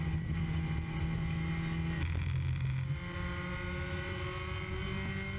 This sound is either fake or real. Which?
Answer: real